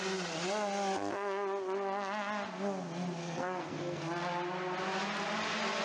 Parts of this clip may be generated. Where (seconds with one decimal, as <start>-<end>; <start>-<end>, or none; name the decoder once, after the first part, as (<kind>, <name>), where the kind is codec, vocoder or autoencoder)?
3.2-4.0 (codec, SNAC)